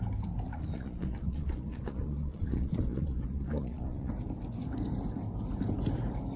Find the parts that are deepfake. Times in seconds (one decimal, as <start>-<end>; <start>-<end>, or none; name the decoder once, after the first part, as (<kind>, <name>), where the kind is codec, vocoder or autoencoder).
0.5-4.1 (vocoder, Vocos)

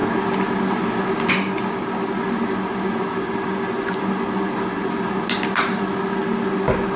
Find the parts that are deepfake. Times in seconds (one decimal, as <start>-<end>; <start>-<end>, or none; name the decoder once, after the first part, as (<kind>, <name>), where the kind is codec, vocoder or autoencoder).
none

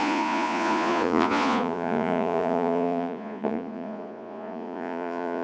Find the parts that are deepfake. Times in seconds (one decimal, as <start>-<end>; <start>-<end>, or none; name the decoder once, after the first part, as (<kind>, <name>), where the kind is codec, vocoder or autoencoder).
0.0-5.4 (vocoder, Vocos)

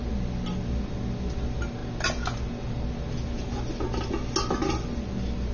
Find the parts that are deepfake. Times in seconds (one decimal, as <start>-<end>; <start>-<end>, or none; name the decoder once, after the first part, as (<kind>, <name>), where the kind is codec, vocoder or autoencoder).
none